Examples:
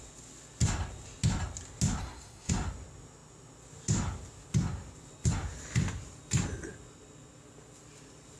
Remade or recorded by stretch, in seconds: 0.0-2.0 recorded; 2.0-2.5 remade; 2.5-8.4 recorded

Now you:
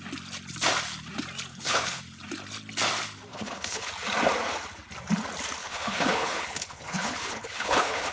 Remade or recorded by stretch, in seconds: 0.0-1.5 recorded; 1.5-2.0 remade; 2.0-3.3 recorded; 3.3-3.9 remade; 3.9-5.6 recorded; 5.6-8.1 remade